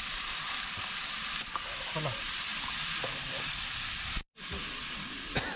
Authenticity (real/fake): fake